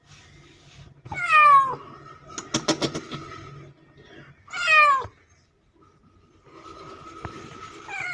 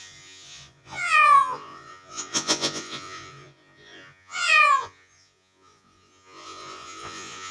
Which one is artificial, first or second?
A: second